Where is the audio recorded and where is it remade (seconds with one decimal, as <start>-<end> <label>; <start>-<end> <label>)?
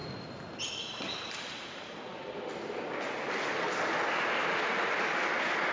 0.0-5.7 recorded